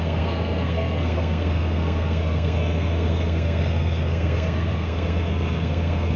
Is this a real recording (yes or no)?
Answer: no